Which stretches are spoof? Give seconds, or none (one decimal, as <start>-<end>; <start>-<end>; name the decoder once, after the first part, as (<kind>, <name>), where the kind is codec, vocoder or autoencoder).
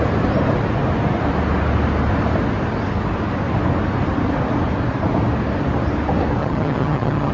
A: 6.4-7.3 (vocoder, HiFi-GAN)